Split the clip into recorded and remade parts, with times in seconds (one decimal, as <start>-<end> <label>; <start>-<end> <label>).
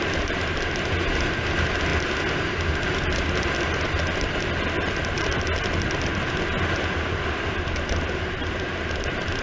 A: 0.0-9.4 recorded